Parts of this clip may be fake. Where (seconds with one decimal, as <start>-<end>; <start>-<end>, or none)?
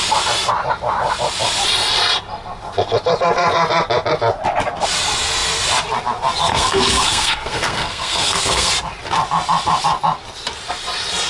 6.5-8.7